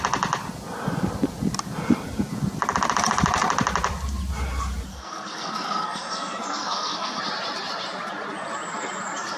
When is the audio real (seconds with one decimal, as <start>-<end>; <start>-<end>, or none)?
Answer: 0.0-4.9; 7.2-9.4